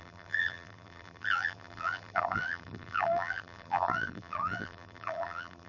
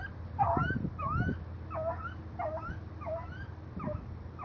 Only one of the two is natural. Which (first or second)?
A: second